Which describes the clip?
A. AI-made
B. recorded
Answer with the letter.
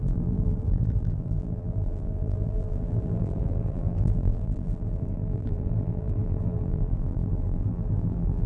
A